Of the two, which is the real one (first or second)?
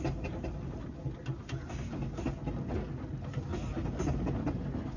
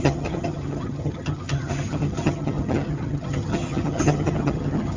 first